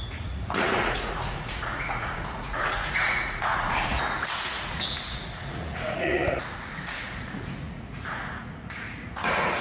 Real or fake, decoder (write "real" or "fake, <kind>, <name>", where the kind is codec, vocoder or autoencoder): fake, vocoder, Vocos